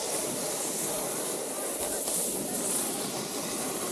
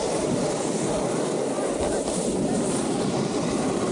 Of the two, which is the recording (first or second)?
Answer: first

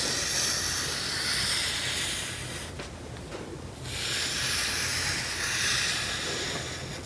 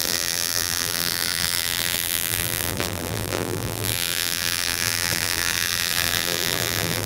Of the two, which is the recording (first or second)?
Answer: first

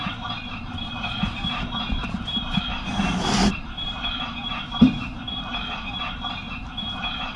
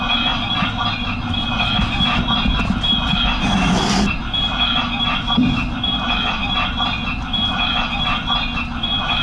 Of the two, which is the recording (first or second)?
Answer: second